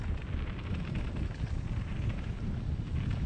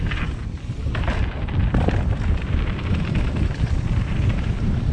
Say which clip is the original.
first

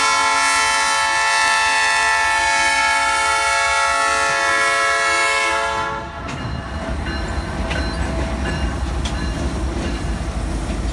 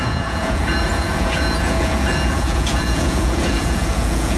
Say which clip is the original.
first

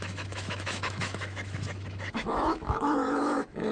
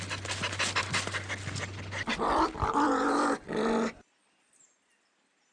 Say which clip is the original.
second